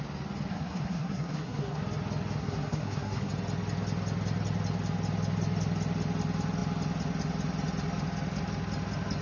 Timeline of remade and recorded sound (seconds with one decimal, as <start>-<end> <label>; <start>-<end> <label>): 0.0-0.5 recorded; 0.5-1.8 remade; 1.8-2.4 recorded; 2.4-3.3 remade; 3.3-9.2 recorded